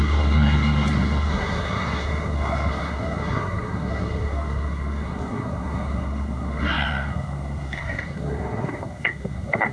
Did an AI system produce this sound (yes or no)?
yes